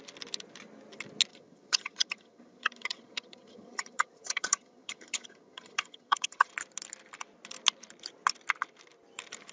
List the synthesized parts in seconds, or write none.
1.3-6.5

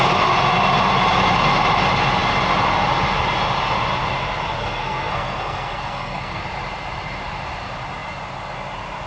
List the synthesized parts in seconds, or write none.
4.6-6.4

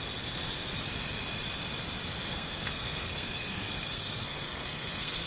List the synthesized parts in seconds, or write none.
2.3-5.3